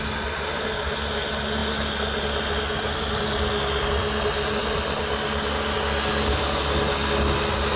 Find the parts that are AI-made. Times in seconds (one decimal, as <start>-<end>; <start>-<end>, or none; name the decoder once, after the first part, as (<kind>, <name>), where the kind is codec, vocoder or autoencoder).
none